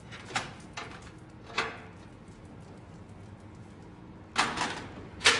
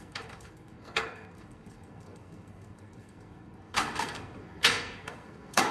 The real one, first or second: first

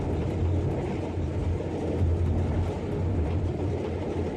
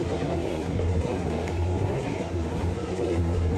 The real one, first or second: first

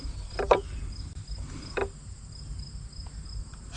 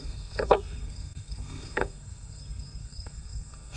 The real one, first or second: first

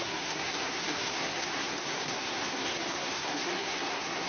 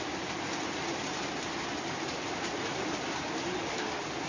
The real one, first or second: second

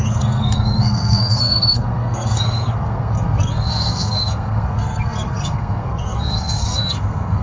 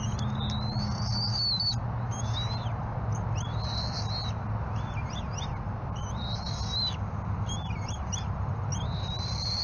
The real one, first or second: second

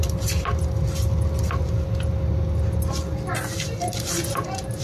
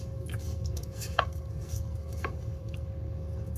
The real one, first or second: first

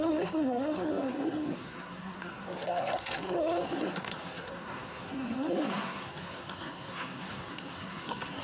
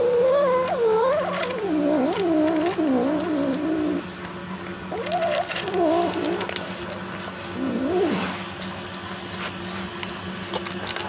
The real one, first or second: second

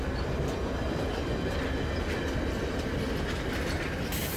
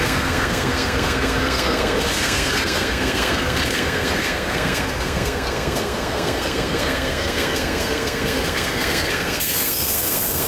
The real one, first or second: first